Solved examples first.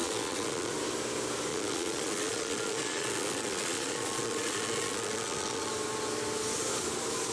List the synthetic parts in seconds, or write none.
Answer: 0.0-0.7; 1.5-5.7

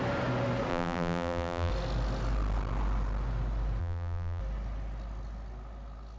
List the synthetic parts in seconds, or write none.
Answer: 0.7-1.7; 3.8-4.4

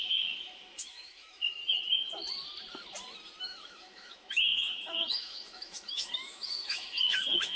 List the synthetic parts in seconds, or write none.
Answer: 0.0-1.6; 3.4-7.6

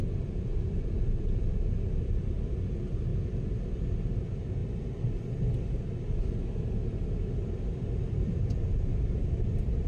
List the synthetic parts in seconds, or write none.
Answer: 0.6-3.1; 3.9-4.6; 7.4-9.9

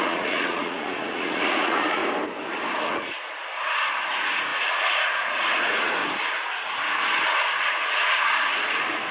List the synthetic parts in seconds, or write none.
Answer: 0.0-2.0; 2.8-3.5; 4.1-6.0; 7.6-9.1

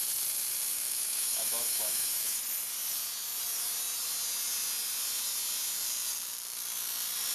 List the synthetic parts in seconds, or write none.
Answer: 0.7-2.4